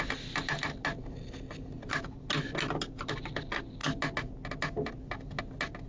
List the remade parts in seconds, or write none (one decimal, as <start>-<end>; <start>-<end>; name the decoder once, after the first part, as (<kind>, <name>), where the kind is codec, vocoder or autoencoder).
none